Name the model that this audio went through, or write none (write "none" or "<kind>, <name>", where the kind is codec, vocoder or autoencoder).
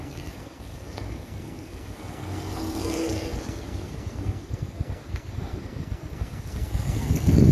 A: codec, SNAC